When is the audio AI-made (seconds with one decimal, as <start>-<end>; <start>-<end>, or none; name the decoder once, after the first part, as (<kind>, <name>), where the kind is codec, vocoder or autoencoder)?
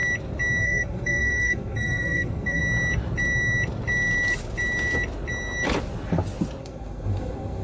0.6-2.6 (codec, SNAC); 6.6-7.6